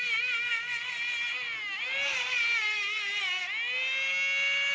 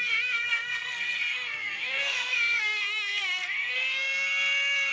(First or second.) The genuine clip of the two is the first